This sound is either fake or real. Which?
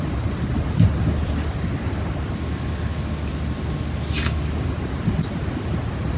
real